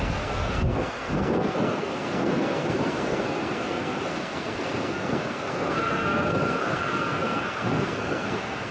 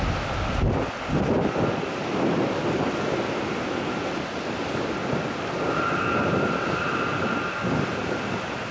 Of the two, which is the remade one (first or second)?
first